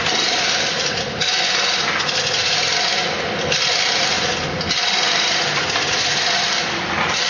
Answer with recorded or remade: recorded